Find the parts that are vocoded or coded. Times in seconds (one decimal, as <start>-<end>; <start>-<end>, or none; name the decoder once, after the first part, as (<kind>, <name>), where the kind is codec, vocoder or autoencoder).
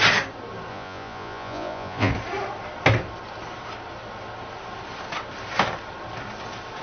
0.7-2.1 (vocoder, Vocos)